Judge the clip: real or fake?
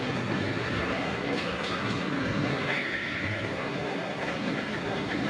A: fake